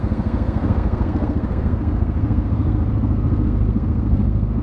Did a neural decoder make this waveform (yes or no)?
yes